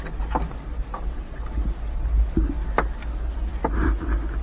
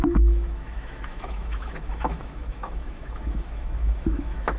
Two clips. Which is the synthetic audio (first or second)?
second